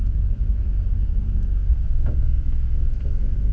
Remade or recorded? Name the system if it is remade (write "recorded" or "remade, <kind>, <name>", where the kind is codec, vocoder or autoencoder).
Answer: remade, codec, SNAC